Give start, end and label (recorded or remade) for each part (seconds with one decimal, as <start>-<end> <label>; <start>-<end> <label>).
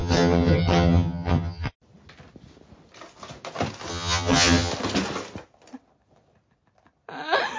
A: 0.0-1.7 remade; 1.7-3.9 recorded; 3.9-4.7 remade; 4.7-7.6 recorded